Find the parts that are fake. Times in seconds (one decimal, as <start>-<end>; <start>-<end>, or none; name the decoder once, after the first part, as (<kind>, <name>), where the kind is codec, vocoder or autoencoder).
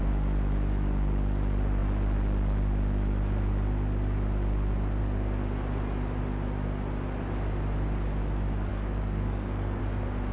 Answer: 8.7-9.8 (codec, DAC)